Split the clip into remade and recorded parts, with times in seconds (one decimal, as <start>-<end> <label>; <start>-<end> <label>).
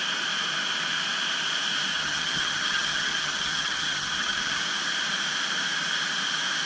0.0-1.9 recorded; 1.9-4.6 remade; 4.6-6.7 recorded